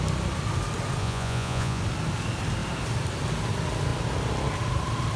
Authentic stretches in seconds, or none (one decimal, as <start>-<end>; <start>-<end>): 0.0-1.0; 1.8-5.2